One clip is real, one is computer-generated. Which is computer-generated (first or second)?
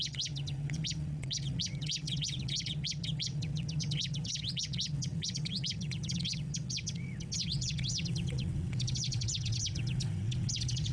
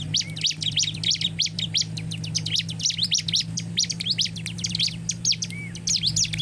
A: first